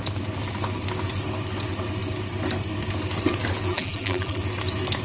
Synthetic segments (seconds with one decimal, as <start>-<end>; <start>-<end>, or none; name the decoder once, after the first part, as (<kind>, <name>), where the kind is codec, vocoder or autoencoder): 3.7-4.4 (vocoder, BigVGAN v2)